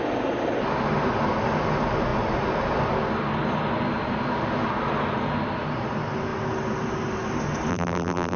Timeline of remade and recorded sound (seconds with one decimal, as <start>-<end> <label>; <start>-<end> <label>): 0.0-7.7 recorded; 7.7-8.4 remade